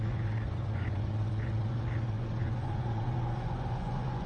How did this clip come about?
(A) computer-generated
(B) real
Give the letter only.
A